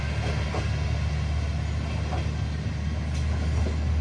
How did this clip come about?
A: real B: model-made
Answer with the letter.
A